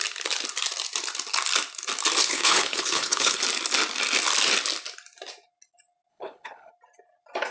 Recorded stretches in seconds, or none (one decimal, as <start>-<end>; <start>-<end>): 0.0-2.2; 3.4-6.1; 6.7-7.5